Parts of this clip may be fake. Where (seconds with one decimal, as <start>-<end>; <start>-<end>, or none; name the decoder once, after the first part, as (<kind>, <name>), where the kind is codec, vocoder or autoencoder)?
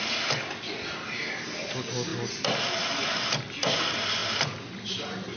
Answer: 4.2-5.4 (vocoder, BigVGAN v2)